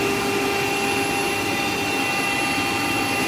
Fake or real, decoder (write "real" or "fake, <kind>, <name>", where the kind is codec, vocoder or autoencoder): real